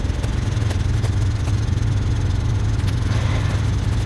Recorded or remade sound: recorded